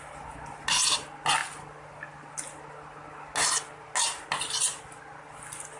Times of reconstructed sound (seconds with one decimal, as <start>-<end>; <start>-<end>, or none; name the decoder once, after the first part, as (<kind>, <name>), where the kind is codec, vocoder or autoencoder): none